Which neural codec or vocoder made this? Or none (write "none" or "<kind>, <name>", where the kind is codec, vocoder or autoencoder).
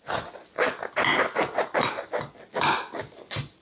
none